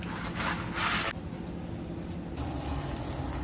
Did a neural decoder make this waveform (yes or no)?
no